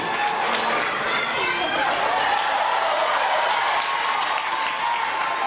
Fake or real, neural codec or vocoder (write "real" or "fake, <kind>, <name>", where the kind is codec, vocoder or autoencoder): real